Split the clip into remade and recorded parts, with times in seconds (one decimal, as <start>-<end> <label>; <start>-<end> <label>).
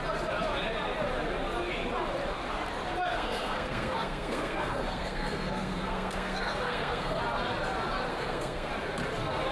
0.0-3.1 recorded; 3.1-7.2 remade; 7.2-8.1 recorded; 8.1-8.7 remade; 8.7-9.5 recorded